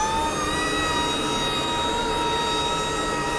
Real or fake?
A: real